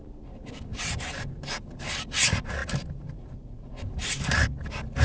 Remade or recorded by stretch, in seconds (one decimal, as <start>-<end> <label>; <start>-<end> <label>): 0.0-5.0 recorded